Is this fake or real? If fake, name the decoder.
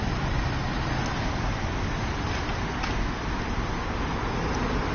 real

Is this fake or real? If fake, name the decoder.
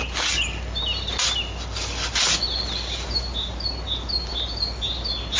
real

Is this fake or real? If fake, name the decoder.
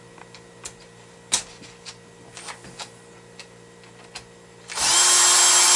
real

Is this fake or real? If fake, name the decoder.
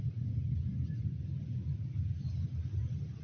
real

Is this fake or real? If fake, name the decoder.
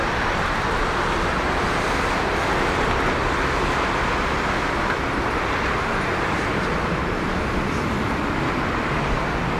real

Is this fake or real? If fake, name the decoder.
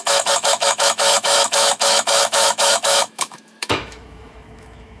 fake, autoencoder, DAC-VAE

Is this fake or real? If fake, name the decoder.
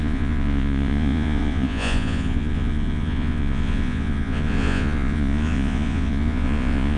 fake, vocoder, Vocos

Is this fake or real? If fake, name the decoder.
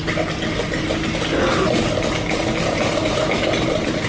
real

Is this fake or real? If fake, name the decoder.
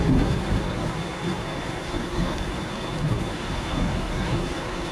fake, codec, SNAC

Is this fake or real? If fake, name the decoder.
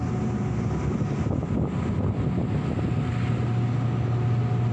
real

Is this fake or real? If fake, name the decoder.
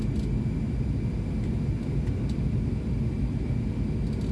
real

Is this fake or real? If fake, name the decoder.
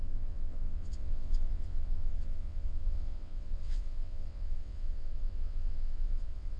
fake, vocoder, WaveNeXt